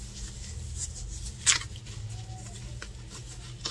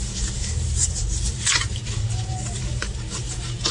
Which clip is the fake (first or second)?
second